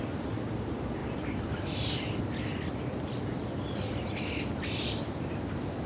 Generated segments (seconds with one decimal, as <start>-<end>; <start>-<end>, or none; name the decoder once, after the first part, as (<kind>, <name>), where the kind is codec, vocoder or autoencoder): 0.0-5.9 (vocoder, BigVGAN v2)